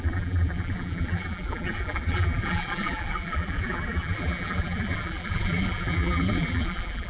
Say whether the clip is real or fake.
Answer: fake